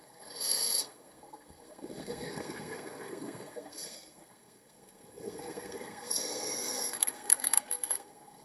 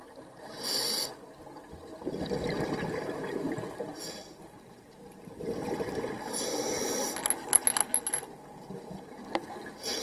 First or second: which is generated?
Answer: first